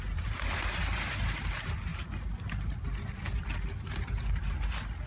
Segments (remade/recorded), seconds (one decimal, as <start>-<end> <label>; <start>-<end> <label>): 0.0-5.1 recorded